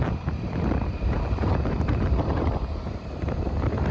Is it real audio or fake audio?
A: fake